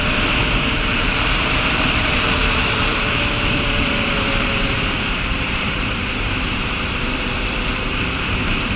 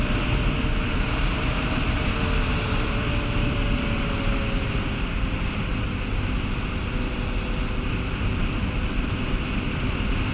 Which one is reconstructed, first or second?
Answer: first